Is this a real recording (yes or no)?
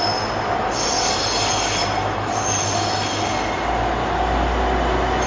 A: yes